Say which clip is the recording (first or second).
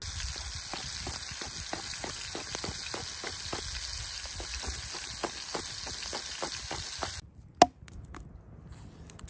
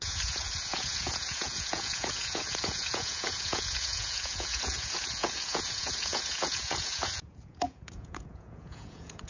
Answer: first